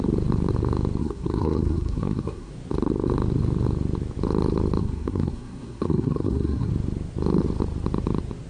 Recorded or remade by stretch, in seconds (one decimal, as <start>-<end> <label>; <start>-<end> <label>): 0.0-1.0 recorded; 1.0-2.5 remade; 2.5-4.8 recorded; 4.8-6.7 remade; 6.7-8.5 recorded